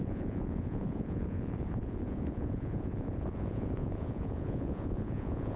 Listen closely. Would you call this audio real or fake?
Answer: fake